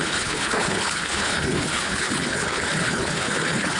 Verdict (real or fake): fake